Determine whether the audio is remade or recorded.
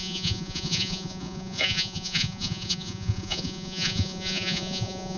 remade